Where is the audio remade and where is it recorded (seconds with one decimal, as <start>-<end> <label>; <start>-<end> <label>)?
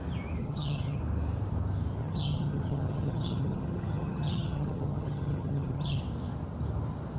0.0-0.4 recorded; 0.4-1.0 remade; 1.0-2.0 recorded; 2.0-6.0 remade; 6.0-7.2 recorded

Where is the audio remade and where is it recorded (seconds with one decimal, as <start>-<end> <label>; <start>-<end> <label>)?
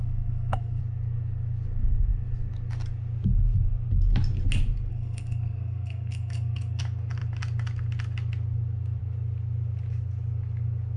0.0-0.8 remade; 0.8-4.9 recorded; 4.9-6.8 remade; 6.8-11.0 recorded